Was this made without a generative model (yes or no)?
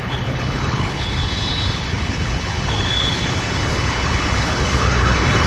no